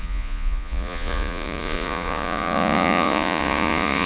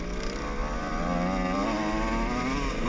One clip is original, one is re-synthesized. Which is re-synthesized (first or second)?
first